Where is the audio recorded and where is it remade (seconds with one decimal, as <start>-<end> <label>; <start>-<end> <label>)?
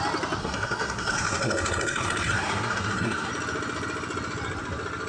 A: 0.0-0.4 recorded; 0.4-3.3 remade; 3.3-5.1 recorded